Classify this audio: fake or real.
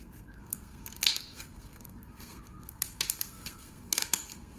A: fake